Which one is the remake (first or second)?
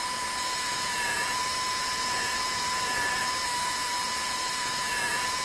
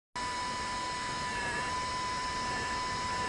first